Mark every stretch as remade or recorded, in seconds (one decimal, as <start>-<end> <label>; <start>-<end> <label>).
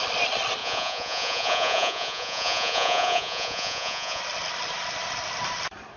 0.0-0.6 recorded; 0.6-4.2 remade; 4.2-6.0 recorded